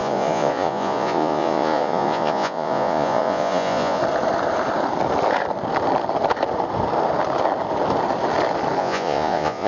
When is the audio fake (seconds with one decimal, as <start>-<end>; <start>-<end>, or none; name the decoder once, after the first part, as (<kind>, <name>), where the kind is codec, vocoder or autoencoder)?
0.0-4.0 (vocoder, Vocos); 8.8-9.7